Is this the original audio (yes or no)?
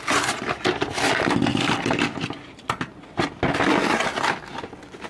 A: yes